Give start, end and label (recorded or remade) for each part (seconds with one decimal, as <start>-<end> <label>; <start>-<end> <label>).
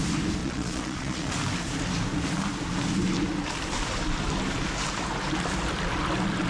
0.0-0.4 recorded; 0.4-1.3 remade; 1.3-6.5 recorded